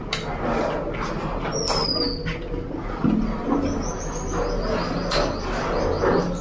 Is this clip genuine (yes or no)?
yes